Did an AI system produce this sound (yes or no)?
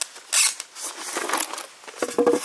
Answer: no